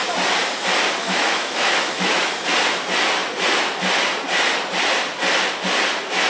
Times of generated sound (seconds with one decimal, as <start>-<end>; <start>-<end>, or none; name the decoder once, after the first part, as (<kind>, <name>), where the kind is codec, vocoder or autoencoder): 1.0-2.3 (autoencoder, DAC-VAE)